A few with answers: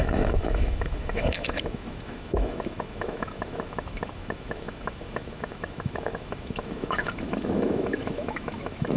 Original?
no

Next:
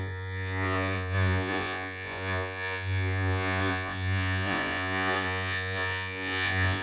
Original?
no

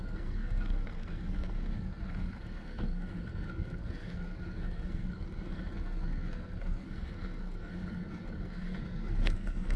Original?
no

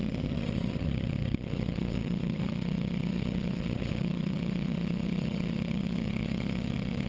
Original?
no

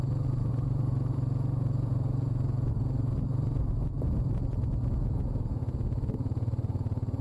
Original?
no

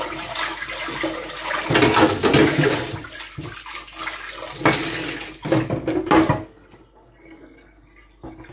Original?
yes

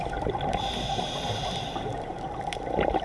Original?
yes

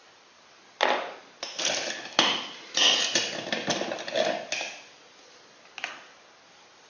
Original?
yes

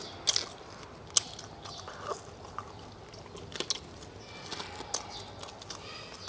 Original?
yes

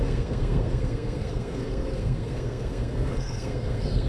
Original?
no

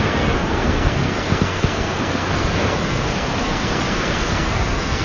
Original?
no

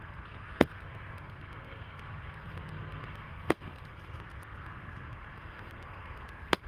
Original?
no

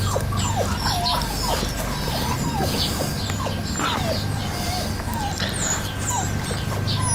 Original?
yes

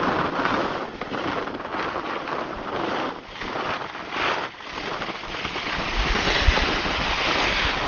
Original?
yes